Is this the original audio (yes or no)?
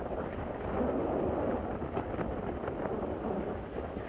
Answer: yes